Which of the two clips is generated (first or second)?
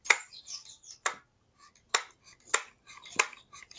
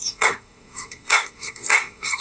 second